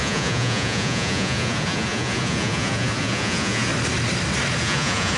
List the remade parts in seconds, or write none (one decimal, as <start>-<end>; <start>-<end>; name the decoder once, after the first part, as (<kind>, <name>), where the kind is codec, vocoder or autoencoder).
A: 0.0-3.7 (vocoder, Vocos); 4.6-5.2